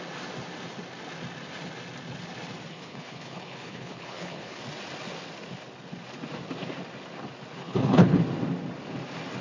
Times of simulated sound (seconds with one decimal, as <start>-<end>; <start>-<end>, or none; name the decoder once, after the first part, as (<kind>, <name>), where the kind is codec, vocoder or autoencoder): 2.7-4.6 (codec, HILCodec); 7.6-8.2

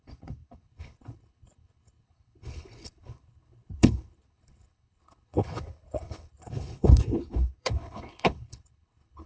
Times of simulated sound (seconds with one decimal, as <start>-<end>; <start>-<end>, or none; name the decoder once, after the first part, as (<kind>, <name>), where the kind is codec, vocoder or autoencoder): 0.0-9.3 (codec, HILCodec)

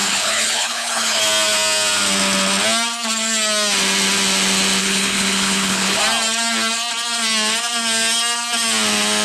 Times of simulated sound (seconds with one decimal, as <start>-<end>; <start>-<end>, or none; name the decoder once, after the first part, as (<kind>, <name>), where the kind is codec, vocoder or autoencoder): 0.0-1.2 (codec, HILCodec); 4.8-6.0

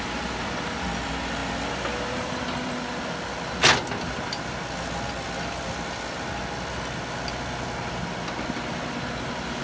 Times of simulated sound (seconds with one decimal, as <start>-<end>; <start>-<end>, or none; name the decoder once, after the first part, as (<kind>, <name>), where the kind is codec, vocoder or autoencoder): none

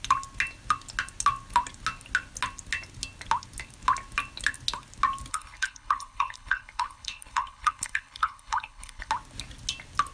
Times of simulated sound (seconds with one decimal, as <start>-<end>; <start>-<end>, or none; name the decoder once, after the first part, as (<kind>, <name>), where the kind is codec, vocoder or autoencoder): 5.3-9.1 (codec, HILCodec)